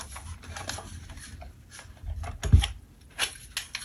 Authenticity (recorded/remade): recorded